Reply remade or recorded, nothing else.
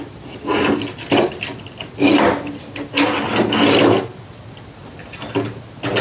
recorded